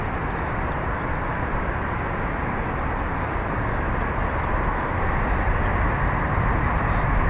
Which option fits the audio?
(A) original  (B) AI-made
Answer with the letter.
A